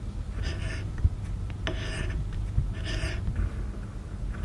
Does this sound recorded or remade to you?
recorded